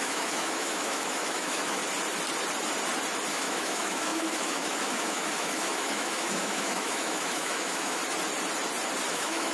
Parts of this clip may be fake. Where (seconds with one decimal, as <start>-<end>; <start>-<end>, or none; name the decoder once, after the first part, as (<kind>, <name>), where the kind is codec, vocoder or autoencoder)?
0.0-1.8 (autoencoder, DAC-VAE); 3.3-8.0; 9.1-9.5